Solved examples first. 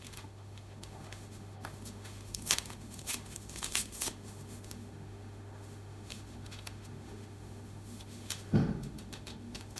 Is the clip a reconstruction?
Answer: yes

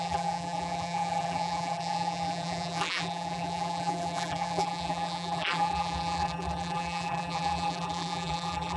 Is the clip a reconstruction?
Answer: yes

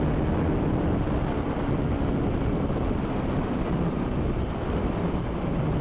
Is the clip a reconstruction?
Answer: no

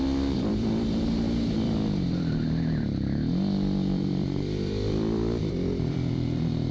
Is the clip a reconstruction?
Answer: yes